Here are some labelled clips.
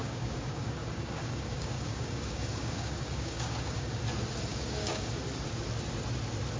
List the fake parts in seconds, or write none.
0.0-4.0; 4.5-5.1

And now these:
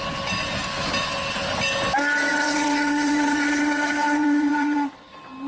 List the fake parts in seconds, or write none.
2.3-4.9

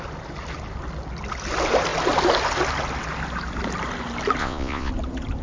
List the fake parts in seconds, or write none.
4.4-4.9

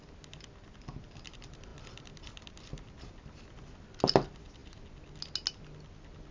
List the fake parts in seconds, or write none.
none

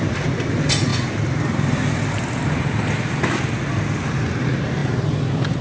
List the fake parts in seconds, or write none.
none

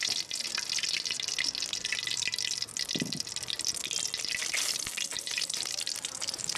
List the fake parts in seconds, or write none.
5.1-6.6

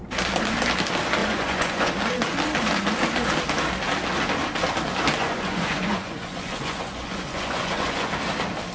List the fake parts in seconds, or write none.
1.2-1.9; 5.2-8.1